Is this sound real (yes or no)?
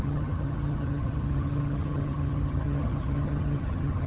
no